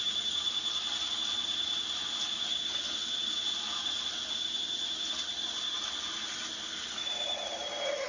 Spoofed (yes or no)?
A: no